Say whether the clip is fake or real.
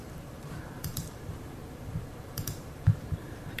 fake